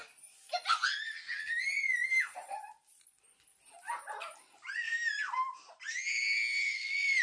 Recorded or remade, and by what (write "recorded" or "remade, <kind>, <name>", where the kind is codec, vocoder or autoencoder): recorded